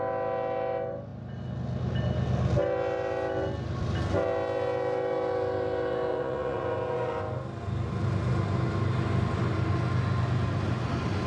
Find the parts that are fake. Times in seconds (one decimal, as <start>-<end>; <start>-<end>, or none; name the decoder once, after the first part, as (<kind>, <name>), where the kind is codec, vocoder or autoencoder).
6.1-7.1 (vocoder, Vocos)